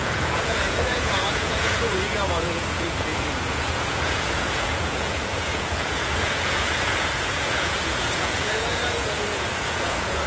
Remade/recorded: remade